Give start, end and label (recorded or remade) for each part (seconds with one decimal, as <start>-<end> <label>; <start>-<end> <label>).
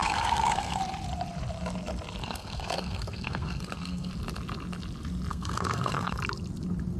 0.0-0.8 remade; 0.8-2.2 recorded; 2.2-4.1 remade; 4.1-5.3 recorded; 5.3-6.2 remade; 6.2-7.0 recorded